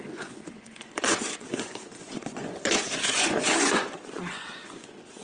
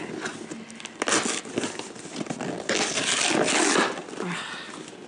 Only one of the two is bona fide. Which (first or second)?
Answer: second